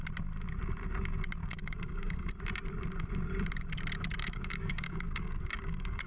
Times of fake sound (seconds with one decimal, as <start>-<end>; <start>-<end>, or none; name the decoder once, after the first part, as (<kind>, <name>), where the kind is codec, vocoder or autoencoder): 1.4-2.3 (codec, DAC); 4.2-6.1